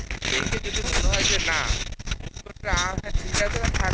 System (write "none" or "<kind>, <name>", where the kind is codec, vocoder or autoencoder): none